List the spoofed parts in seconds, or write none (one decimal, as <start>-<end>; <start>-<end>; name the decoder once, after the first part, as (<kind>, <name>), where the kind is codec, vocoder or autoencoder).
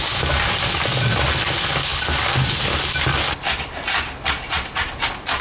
none